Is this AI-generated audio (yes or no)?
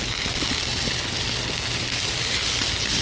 no